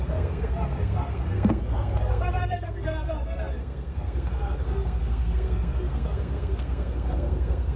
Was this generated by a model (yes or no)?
yes